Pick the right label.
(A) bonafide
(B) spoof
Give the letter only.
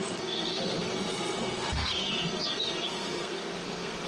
B